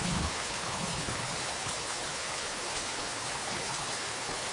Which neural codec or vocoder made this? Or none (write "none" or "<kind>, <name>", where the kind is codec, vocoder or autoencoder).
codec, HILCodec